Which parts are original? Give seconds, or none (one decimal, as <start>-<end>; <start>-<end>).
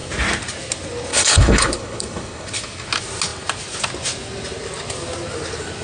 0.0-1.1; 2.6-5.8